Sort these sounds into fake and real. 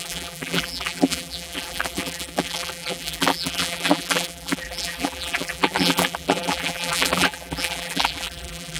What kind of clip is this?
fake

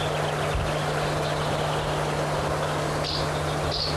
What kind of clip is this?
real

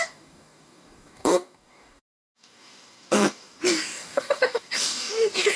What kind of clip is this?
fake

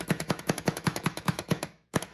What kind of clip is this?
fake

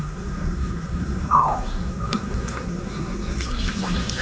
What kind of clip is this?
fake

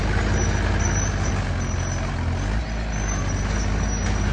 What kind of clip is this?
real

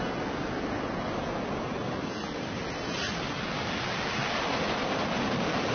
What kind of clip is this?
real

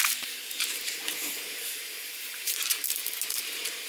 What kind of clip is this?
fake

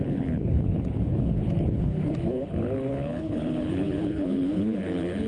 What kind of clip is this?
fake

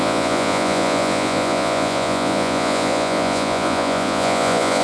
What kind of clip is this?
fake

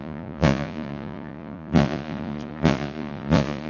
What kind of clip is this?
fake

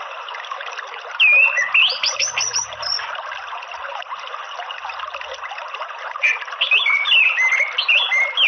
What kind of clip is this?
real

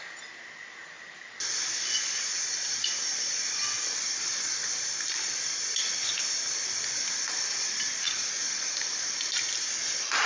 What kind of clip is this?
real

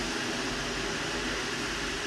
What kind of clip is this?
real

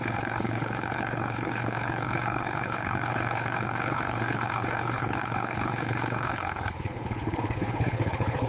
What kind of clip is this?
fake